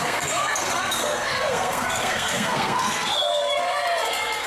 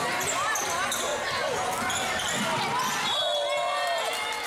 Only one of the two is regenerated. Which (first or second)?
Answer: first